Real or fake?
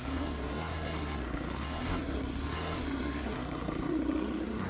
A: fake